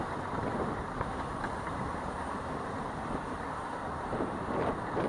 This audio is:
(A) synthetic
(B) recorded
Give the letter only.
A